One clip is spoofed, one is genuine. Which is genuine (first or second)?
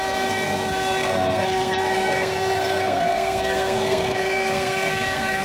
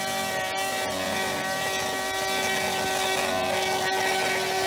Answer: second